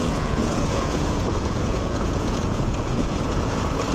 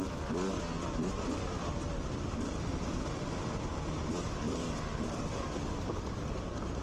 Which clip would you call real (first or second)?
second